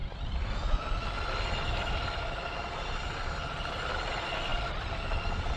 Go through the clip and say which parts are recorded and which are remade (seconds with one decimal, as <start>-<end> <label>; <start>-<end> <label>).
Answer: 0.0-5.6 recorded